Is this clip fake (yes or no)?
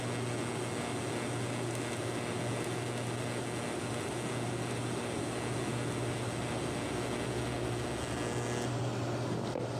no